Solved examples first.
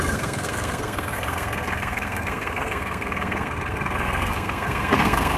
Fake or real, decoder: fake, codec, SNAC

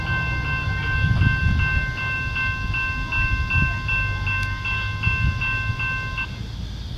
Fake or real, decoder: real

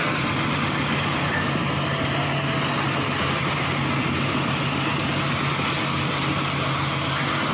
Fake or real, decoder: real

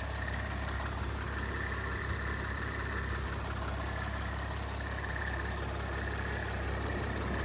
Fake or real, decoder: real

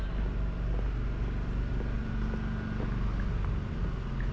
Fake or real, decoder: real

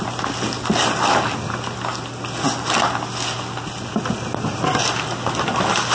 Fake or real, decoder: real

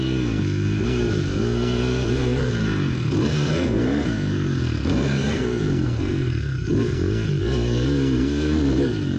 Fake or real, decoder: fake, codec, SNAC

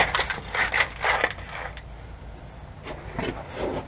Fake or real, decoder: real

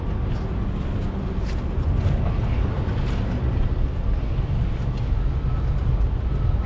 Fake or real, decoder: real